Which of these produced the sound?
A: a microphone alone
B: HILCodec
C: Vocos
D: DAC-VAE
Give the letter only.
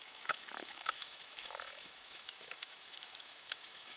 D